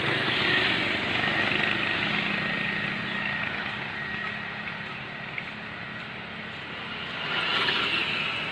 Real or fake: real